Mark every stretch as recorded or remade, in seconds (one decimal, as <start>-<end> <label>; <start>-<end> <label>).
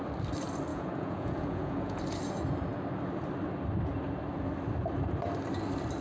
0.0-0.7 recorded; 0.7-2.0 remade; 2.0-6.0 recorded